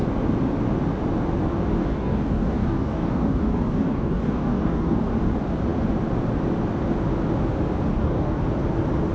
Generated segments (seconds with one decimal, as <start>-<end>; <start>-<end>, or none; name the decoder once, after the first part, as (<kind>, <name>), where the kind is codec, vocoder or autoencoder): 1.8-5.1 (codec, DAC); 7.9-8.4